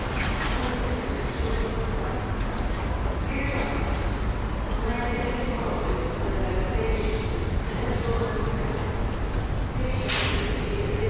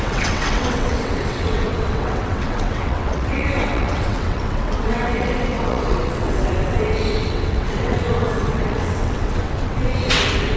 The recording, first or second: first